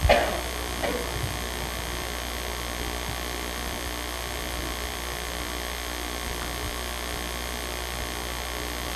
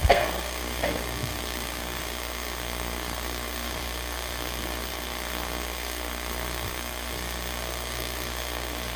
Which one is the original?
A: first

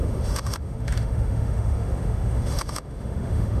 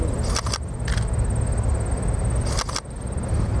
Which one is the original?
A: second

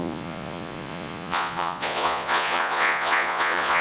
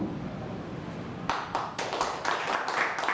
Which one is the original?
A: second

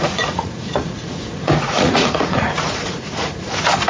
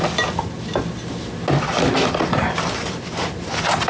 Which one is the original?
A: second